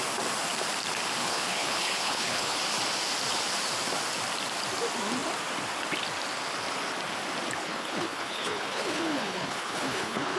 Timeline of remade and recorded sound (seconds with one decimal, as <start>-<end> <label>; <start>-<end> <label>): 0.0-1.2 recorded; 1.2-2.6 remade; 2.6-7.6 recorded; 7.6-10.4 remade